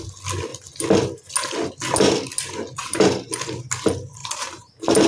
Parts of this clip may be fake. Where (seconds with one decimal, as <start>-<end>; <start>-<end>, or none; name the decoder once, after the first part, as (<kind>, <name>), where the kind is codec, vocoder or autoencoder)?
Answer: 2.8-3.3 (vocoder, BigVGAN v2); 4.2-5.1